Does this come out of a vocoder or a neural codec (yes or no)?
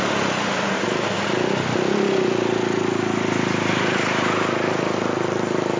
no